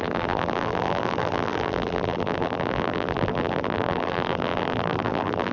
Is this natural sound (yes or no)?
no